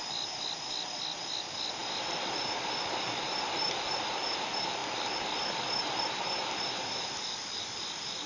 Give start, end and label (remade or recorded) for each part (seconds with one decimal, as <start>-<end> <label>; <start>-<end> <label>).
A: 0.0-8.3 recorded